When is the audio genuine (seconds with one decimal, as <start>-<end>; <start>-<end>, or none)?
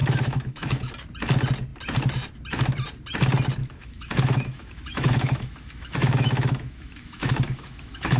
0.9-3.6